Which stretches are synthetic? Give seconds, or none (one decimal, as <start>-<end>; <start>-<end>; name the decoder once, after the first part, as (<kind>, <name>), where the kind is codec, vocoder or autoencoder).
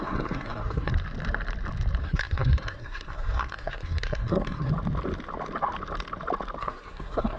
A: 0.0-0.9 (codec, SNAC); 2.0-4.7; 6.6-7.4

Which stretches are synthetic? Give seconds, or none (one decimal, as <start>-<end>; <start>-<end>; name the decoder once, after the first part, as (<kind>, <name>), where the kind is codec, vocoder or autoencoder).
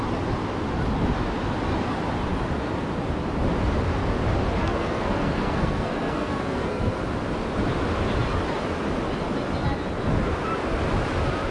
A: 4.6-7.0 (codec, SNAC)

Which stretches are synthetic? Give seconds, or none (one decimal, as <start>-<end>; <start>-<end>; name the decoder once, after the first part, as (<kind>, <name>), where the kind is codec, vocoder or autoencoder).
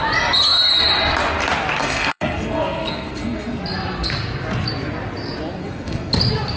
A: 1.8-3.6 (codec, SNAC); 5.6-6.1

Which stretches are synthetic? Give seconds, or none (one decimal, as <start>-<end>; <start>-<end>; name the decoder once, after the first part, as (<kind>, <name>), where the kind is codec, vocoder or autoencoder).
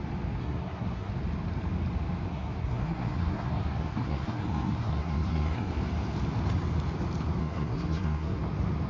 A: 0.4-1.1 (codec, SNAC); 2.3-5.7; 7.4-8.4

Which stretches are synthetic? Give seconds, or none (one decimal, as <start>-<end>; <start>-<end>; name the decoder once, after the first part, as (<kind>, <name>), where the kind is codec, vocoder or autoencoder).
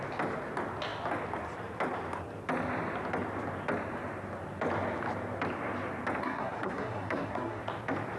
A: 6.2-7.6 (codec, SNAC)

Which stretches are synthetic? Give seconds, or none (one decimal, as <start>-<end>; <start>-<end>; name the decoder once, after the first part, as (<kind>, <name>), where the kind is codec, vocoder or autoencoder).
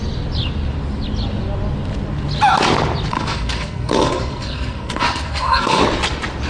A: 3.1-5.8 (codec, SNAC)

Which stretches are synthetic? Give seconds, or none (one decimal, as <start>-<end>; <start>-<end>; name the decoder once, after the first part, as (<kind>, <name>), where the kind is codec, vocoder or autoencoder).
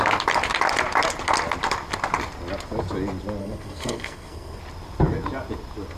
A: 3.4-4.6 (codec, SNAC)